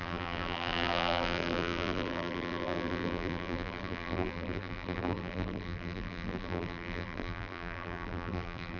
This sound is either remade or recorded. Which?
remade